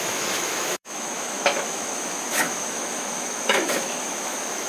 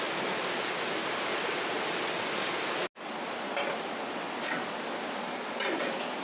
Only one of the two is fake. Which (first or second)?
first